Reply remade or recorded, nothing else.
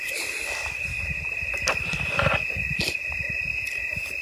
recorded